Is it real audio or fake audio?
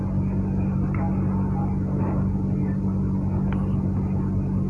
real